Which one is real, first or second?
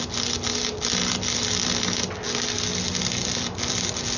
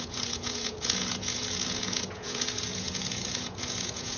first